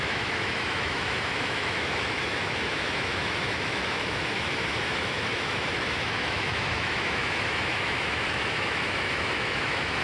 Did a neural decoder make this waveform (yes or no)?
yes